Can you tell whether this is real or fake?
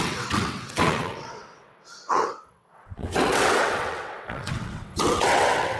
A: fake